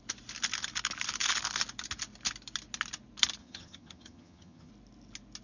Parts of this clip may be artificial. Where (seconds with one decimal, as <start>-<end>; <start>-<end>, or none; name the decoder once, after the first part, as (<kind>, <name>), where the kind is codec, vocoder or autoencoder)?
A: 3.4-4.7 (vocoder, HiFi-GAN)